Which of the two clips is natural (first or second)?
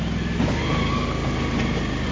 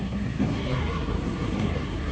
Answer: first